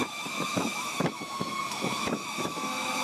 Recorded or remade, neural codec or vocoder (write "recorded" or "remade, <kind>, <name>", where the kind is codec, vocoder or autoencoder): remade, autoencoder, DAC-VAE